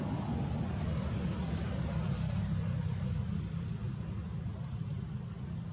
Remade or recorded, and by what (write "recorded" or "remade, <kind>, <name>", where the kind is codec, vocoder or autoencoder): recorded